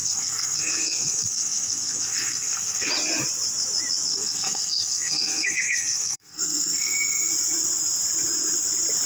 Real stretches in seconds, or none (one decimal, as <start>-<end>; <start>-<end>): 2.9-4.1; 7.3-9.1